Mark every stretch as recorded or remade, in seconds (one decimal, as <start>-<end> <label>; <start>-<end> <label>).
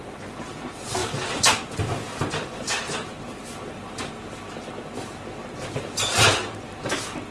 0.0-1.0 recorded; 1.0-4.0 remade; 4.0-7.3 recorded